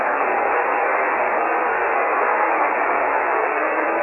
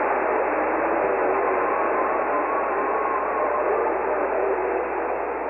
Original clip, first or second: second